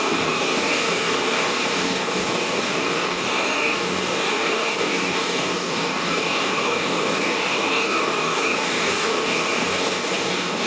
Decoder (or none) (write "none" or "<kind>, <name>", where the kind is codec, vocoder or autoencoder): codec, DAC